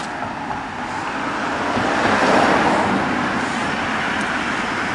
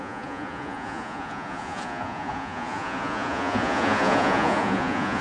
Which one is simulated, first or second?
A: second